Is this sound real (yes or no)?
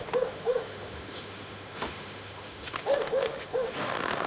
no